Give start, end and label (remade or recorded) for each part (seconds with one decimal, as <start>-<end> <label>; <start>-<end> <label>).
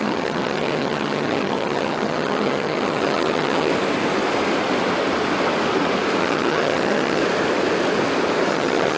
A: 0.0-3.7 remade; 3.7-6.2 recorded; 6.2-7.2 remade; 7.2-8.5 recorded; 8.5-9.0 remade